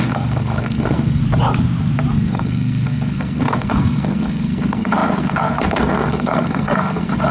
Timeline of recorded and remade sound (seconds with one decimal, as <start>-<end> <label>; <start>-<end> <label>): 0.0-1.2 remade; 1.2-2.1 recorded; 2.1-7.3 remade

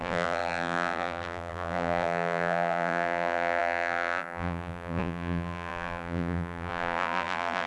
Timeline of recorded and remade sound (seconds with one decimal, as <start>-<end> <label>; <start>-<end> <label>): 0.0-7.7 remade

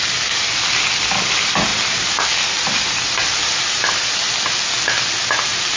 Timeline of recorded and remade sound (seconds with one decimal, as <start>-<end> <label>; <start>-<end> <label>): 0.0-5.8 recorded

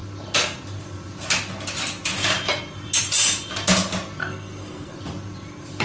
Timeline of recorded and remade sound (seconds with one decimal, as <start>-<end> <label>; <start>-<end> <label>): 0.0-4.2 recorded; 4.2-5.0 remade; 5.0-5.8 recorded

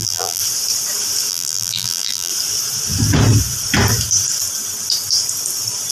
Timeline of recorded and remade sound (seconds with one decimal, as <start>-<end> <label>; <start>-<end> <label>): 0.0-0.4 remade; 0.4-1.3 recorded; 1.3-2.3 remade; 2.3-5.9 recorded